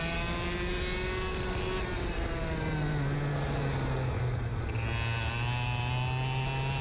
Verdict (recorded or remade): recorded